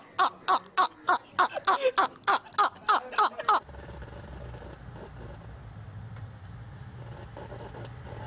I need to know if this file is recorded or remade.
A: recorded